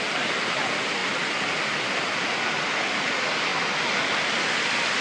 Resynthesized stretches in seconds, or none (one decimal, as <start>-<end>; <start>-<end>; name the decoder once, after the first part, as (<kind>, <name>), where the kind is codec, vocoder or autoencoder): none